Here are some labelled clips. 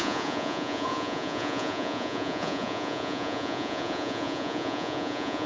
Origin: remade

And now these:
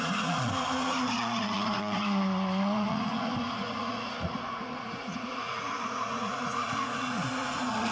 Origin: remade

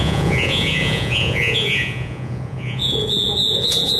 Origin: remade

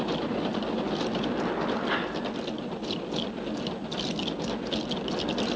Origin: recorded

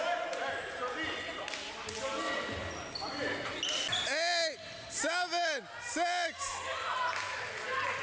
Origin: recorded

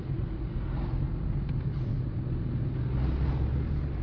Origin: recorded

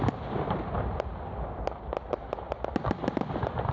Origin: recorded